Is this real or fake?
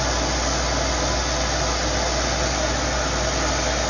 real